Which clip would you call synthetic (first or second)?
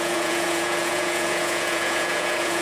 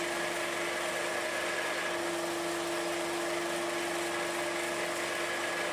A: first